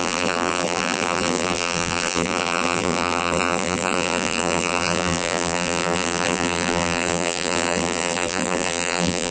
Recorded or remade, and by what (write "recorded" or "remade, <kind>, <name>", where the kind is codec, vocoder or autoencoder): remade, vocoder, BigVGAN v2